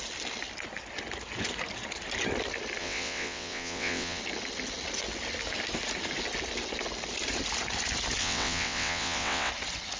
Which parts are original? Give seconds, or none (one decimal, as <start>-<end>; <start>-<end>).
0.0-2.8; 4.2-8.2; 9.5-10.0